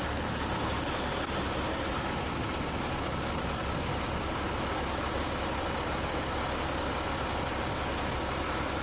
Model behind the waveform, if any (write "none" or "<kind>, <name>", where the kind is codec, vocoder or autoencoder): none